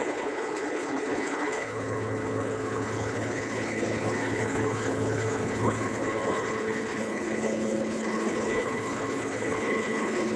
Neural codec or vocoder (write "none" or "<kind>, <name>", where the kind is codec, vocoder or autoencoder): codec, HILCodec